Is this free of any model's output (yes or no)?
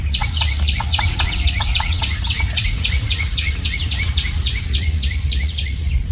no